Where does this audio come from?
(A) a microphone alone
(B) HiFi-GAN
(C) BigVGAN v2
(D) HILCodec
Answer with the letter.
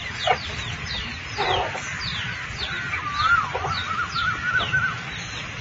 A